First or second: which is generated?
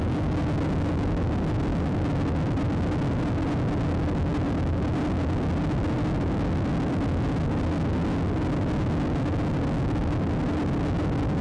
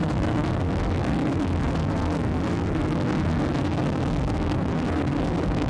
second